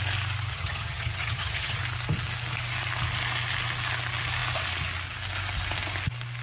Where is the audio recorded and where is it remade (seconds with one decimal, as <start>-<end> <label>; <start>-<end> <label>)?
0.0-0.5 recorded; 0.5-1.8 remade; 1.8-6.4 recorded